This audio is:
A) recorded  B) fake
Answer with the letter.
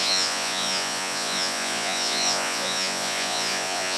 B